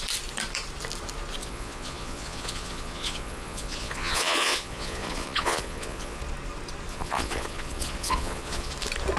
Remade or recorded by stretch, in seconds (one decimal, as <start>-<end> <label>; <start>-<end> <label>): 0.0-1.4 recorded; 1.4-6.2 remade; 6.2-6.9 recorded; 6.9-8.7 remade; 8.7-9.2 recorded